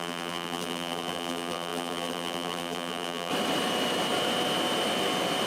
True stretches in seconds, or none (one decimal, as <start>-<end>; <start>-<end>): 3.3-5.5